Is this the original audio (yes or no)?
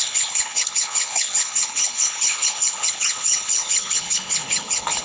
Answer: no